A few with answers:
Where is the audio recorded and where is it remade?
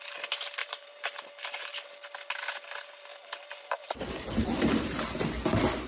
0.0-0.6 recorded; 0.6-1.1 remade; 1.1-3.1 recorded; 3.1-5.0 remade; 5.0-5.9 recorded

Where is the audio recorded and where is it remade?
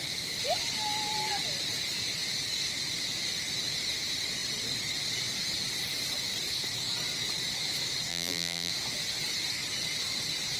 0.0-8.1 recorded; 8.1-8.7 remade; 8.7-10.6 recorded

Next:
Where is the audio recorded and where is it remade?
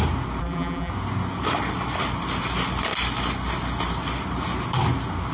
0.0-0.4 recorded; 0.4-0.9 remade; 0.9-5.3 recorded